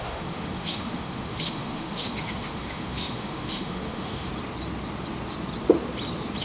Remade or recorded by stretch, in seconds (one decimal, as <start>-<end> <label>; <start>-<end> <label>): 0.0-4.3 remade; 4.3-6.4 recorded